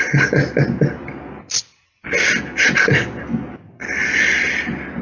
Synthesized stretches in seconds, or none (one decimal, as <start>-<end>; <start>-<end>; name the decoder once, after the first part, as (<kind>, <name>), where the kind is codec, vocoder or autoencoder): none